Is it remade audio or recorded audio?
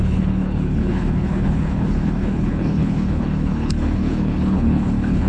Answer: remade